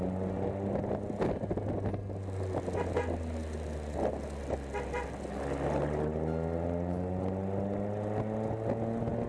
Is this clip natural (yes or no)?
yes